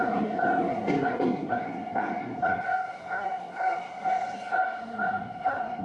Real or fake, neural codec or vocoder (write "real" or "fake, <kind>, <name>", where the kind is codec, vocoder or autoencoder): fake, codec, SNAC